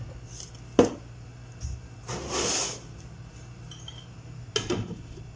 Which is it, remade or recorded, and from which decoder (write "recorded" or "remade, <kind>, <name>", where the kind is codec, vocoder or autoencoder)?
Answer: recorded